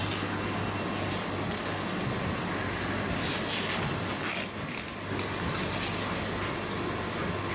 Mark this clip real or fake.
real